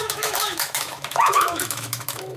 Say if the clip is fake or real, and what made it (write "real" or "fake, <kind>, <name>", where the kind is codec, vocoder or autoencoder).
fake, autoencoder, DAC-VAE